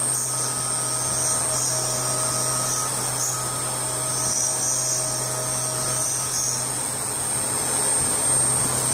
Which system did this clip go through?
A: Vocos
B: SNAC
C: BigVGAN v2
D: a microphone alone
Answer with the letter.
D